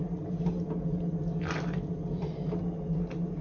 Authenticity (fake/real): real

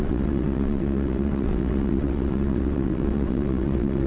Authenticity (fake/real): fake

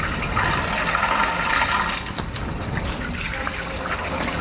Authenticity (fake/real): real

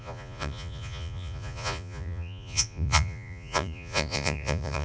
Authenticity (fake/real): fake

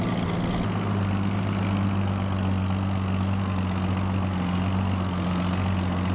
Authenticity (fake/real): real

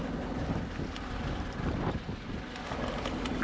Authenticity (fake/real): real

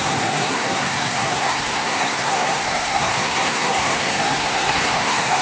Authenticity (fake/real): fake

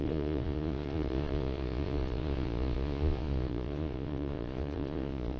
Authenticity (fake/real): fake